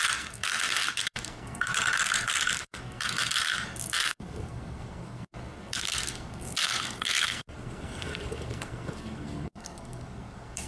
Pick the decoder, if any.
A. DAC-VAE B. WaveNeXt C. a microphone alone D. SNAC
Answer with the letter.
D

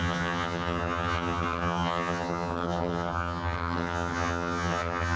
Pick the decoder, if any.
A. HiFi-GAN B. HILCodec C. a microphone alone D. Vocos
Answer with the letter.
A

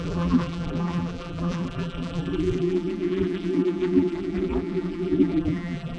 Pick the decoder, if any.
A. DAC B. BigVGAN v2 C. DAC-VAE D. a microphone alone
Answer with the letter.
B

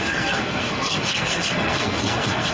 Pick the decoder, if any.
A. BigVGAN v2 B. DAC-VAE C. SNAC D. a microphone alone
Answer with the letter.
C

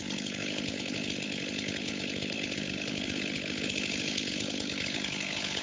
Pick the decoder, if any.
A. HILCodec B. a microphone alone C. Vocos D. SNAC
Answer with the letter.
A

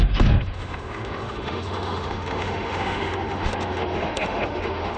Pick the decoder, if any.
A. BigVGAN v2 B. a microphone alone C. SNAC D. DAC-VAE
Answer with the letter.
D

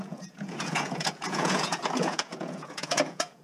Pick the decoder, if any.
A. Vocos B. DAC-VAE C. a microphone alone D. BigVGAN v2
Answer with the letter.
A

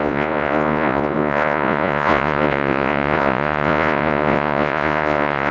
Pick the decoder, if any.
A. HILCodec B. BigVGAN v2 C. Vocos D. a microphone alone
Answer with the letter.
C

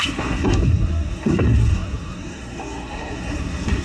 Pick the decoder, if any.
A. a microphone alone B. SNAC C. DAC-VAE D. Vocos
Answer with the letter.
B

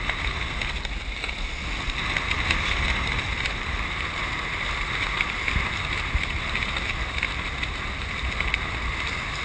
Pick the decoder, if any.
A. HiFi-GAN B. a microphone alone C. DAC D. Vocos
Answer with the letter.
B